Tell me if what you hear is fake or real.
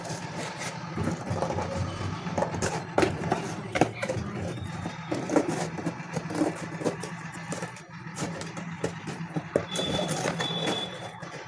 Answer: fake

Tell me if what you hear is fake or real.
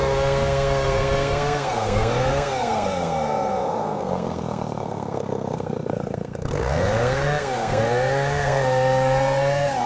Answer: fake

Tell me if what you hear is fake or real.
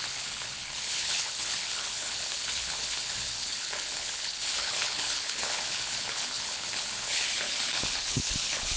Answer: fake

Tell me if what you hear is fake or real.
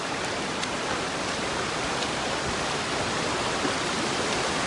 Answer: real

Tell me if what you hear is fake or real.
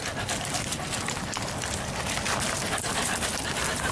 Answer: real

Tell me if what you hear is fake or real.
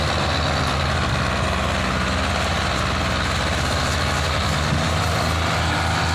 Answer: real